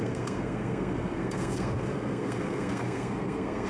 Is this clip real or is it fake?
fake